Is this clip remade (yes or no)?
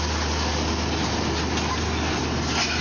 no